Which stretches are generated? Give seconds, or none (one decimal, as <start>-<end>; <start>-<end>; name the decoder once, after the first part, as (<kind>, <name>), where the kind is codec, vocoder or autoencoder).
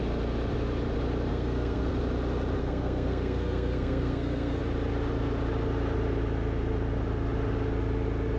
1.3-1.9 (codec, SNAC); 2.6-4.6